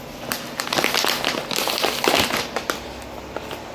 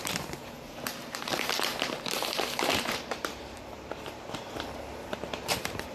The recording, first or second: first